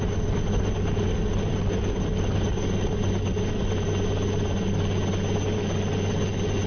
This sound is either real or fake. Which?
real